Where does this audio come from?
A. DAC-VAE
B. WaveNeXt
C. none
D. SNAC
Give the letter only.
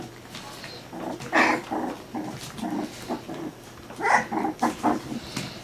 C